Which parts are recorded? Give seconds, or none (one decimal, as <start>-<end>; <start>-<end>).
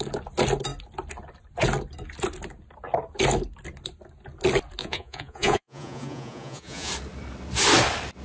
0.0-4.8; 6.9-8.2